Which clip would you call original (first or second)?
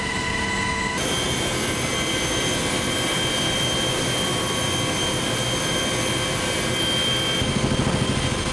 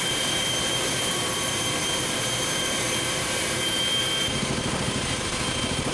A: first